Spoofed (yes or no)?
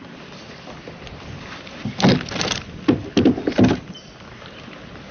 no